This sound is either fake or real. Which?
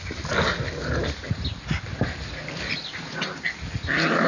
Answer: real